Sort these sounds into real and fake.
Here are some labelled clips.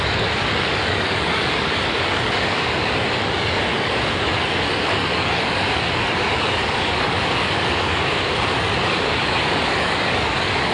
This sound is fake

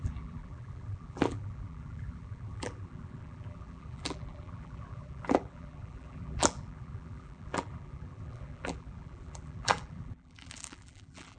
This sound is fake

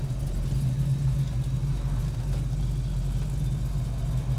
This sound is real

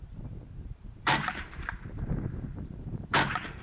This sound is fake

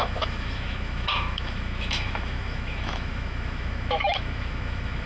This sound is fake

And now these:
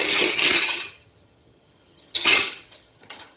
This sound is fake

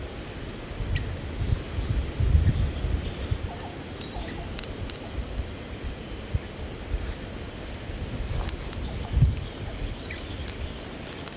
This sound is real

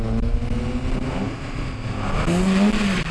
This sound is real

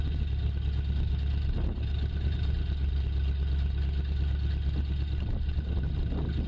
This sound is real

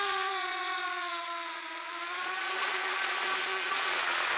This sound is fake